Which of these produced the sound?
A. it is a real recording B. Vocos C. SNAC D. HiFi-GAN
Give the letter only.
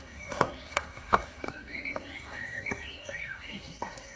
C